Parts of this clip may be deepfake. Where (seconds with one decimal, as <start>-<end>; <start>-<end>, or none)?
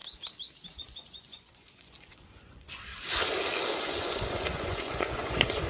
0.7-2.9; 3.8-5.7